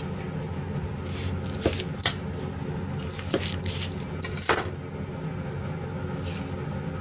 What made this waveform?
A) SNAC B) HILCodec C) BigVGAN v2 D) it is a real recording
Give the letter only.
D